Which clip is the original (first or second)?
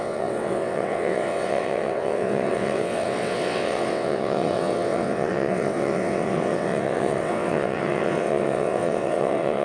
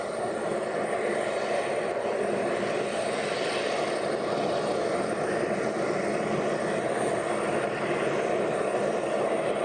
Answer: second